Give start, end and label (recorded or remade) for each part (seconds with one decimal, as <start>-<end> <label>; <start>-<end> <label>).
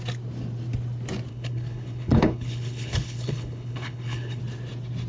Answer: 0.0-1.3 recorded; 1.3-4.4 remade; 4.4-5.1 recorded